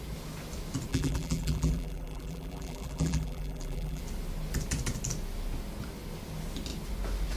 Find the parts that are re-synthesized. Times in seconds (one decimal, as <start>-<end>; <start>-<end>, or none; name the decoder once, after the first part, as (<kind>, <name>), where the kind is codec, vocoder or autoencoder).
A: 0.9-4.0 (vocoder, BigVGAN v2)